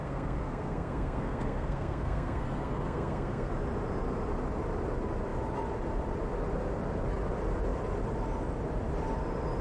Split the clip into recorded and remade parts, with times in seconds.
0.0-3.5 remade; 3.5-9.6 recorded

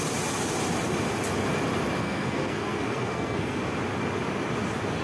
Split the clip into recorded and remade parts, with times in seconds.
0.0-2.0 recorded; 2.0-3.6 remade; 3.6-5.0 recorded

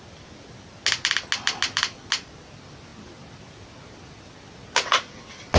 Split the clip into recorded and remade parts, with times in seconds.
0.0-5.6 recorded

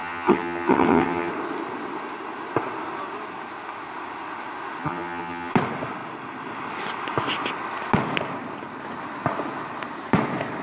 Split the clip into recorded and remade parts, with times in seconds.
0.0-1.3 remade; 1.3-4.8 recorded; 4.8-5.5 remade; 5.5-10.6 recorded